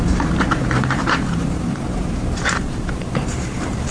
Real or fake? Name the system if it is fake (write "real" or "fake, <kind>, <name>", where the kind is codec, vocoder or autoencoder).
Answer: fake, vocoder, BigVGAN v2